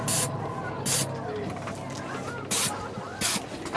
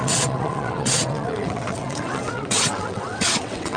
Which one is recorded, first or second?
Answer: first